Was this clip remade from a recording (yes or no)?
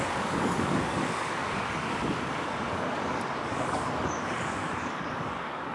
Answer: yes